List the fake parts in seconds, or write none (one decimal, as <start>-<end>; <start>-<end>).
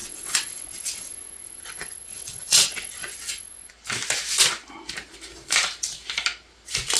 0.0-3.7